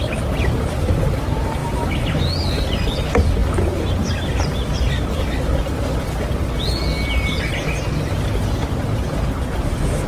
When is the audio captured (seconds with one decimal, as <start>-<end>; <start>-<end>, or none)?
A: 0.0-10.1